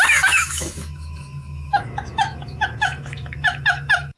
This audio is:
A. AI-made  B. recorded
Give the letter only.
A